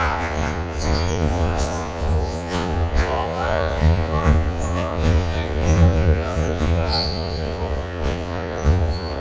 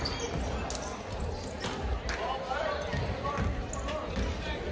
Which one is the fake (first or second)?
first